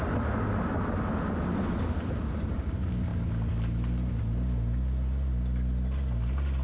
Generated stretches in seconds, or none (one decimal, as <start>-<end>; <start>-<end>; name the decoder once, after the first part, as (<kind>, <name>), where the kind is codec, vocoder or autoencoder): none